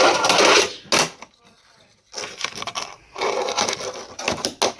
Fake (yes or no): no